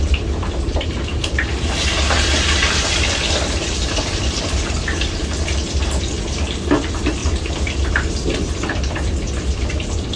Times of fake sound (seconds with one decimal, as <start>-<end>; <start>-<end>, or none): 0.0-10.2